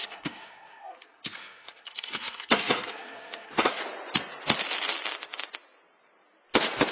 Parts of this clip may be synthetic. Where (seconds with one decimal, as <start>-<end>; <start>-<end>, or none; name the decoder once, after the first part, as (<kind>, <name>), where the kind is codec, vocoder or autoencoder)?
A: 0.0-3.8 (codec, SNAC)